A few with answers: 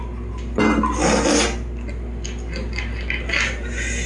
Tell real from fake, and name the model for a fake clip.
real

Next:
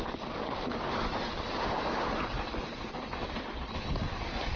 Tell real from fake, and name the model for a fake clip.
real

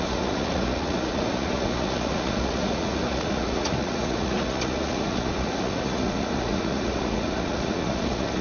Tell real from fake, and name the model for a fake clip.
fake, vocoder, Vocos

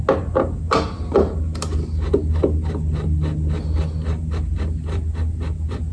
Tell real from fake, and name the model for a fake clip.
real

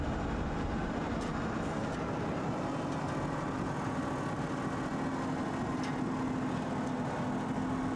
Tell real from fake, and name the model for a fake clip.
real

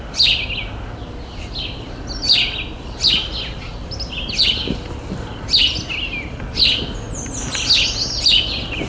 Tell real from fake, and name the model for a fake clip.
real